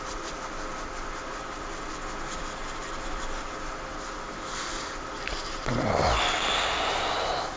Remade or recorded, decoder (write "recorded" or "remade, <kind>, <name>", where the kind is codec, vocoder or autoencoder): recorded